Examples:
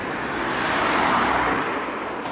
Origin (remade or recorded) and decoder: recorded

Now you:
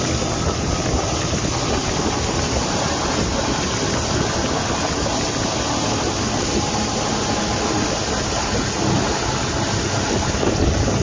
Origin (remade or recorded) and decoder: recorded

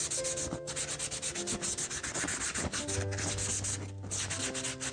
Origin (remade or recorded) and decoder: recorded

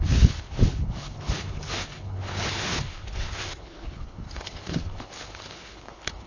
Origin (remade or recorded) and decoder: remade, codec, HILCodec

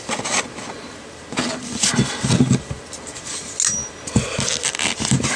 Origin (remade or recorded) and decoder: recorded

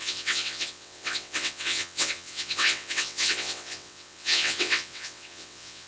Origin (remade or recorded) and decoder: remade, vocoder, WaveNeXt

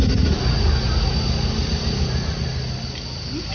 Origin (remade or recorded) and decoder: recorded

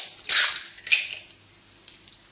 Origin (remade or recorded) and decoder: recorded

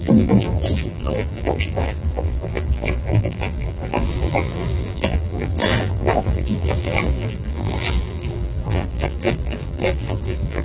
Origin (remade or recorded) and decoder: remade, vocoder, BigVGAN v2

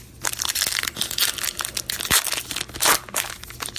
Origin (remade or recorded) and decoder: recorded